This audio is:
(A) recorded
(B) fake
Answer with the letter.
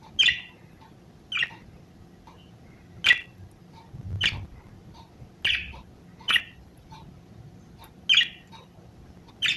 A